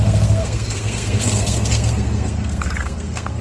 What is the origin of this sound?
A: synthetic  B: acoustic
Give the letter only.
A